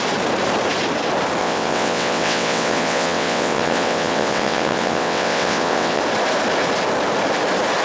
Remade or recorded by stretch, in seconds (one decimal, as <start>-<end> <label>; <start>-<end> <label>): 0.0-1.4 recorded; 1.4-6.0 remade; 6.0-7.8 recorded